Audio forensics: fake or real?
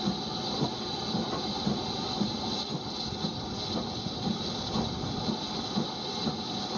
fake